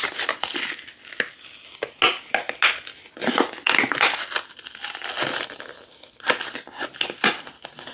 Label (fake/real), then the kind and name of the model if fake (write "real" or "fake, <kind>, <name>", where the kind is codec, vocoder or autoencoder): real